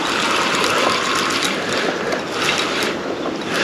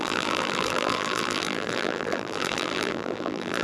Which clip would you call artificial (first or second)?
second